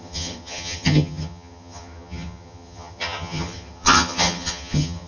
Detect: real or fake fake